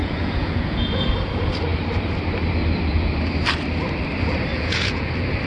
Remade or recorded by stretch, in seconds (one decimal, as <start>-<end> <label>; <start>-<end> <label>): 0.0-1.1 remade; 1.1-4.5 recorded; 4.5-5.1 remade; 5.1-5.5 recorded